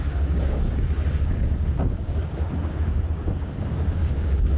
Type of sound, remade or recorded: remade